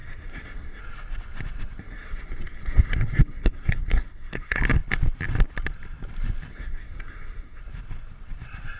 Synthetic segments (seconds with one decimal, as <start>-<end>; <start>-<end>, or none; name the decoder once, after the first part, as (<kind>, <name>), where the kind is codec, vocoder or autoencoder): 0.0-0.8 (codec, SNAC); 1.8-4.6; 6.5-7.6